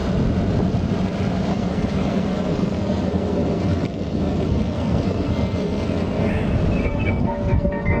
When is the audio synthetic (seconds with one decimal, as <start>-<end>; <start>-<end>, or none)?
1.5-6.3; 6.8-8.0